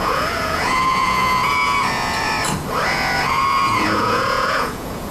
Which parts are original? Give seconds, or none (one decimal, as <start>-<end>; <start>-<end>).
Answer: 2.3-2.9